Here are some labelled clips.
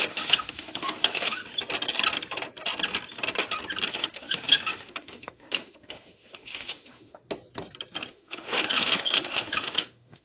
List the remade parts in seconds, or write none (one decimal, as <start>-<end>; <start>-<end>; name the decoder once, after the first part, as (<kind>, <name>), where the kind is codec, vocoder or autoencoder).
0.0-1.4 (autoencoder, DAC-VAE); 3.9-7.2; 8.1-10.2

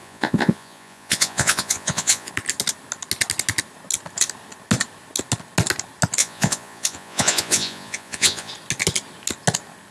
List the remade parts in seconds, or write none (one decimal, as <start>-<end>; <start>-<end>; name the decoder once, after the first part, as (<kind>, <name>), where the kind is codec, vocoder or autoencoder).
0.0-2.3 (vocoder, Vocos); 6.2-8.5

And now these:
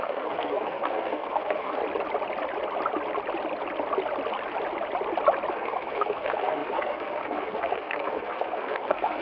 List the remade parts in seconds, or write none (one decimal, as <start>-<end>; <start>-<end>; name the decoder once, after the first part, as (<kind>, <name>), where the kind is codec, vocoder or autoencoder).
0.0-1.8 (codec, SNAC); 5.5-9.2

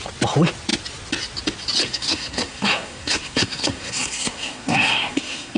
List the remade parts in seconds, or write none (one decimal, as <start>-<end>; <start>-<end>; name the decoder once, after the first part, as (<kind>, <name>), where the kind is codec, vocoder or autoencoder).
1.8-5.6 (codec, SNAC)

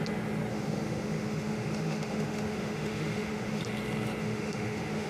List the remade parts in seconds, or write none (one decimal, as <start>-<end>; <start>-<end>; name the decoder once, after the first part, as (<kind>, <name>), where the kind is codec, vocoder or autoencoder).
0.5-3.6 (autoencoder, DAC-VAE); 4.2-5.1

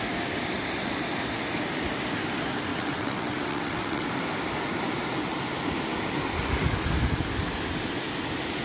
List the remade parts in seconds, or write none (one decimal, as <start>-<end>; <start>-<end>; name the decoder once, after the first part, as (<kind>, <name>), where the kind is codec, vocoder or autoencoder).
2.7-4.1 (vocoder, WaveNeXt)

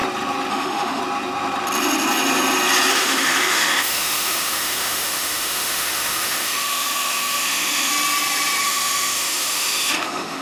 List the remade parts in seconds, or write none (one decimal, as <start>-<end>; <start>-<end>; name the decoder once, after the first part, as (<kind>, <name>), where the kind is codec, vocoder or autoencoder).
0.5-1.0 (autoencoder, DAC-VAE); 2.9-7.9; 8.6-10.4